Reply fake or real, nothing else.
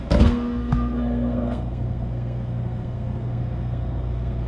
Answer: fake